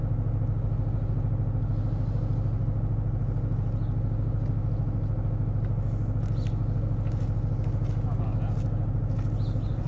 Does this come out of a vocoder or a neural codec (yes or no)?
no